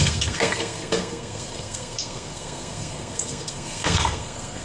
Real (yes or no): no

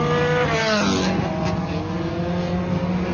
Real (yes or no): yes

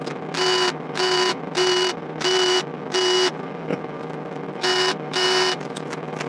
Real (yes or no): no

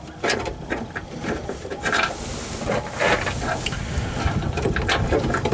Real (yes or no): yes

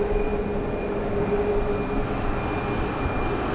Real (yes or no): yes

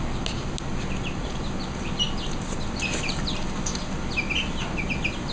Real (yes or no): yes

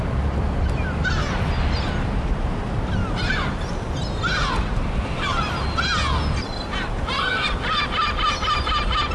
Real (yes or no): yes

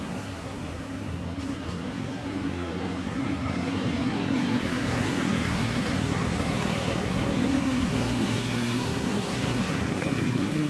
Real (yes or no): no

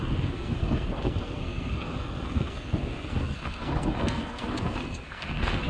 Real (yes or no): no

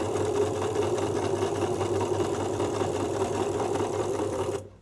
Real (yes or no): no